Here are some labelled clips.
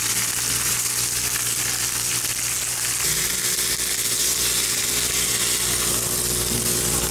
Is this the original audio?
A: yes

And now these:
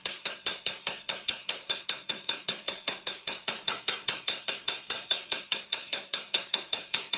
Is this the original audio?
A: no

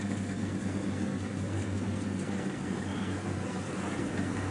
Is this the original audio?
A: no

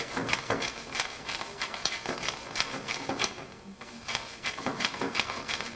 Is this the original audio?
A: no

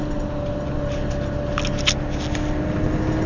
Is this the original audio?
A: yes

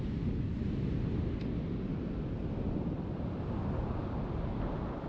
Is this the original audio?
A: yes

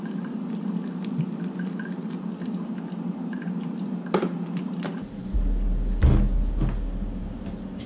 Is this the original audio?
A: yes